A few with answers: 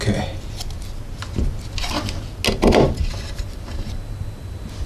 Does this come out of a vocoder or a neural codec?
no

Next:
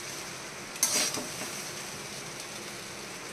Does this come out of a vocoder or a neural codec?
no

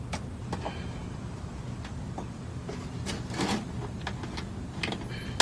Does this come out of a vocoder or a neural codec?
no